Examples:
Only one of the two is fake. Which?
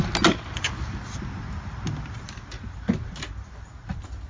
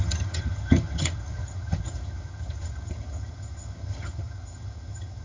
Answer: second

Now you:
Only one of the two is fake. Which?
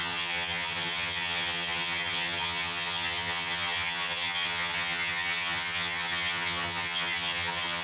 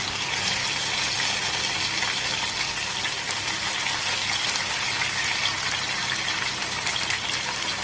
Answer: first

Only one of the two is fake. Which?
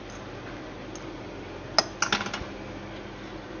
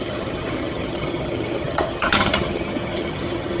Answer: second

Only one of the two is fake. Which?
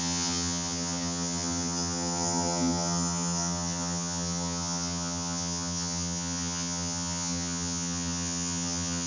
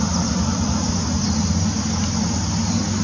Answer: first